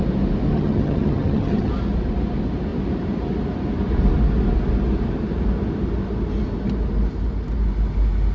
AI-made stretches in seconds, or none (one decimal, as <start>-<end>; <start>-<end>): 0.5-1.7